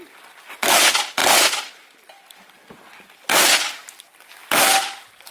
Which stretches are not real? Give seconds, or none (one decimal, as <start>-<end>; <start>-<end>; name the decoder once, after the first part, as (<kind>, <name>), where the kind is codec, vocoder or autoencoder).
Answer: none